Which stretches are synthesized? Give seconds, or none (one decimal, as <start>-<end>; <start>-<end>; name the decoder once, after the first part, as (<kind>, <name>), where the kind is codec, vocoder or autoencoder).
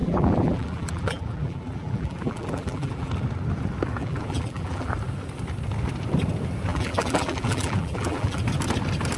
0.0-3.1 (vocoder, BigVGAN v2); 4.0-4.9; 6.7-8.4